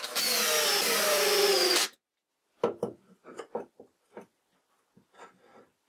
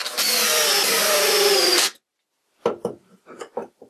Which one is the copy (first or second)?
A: second